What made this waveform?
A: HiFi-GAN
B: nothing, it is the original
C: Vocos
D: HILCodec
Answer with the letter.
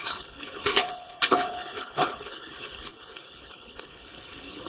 D